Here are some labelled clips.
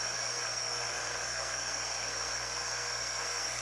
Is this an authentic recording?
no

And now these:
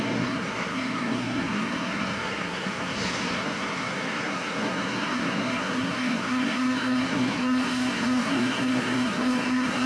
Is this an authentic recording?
no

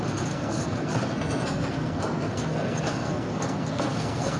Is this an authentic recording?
no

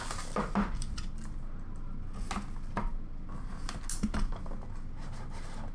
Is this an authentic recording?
yes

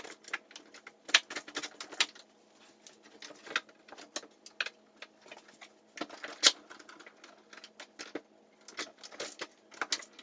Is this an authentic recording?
yes